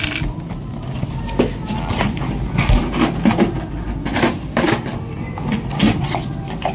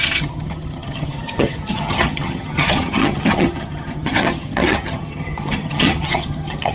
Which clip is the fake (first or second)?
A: second